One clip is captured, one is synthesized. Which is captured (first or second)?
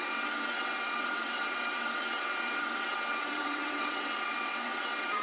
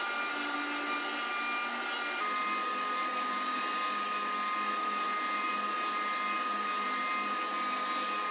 second